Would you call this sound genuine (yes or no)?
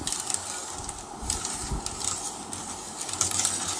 yes